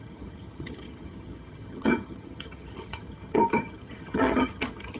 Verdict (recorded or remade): remade